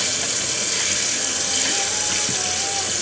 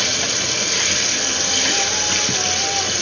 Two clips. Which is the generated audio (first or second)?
second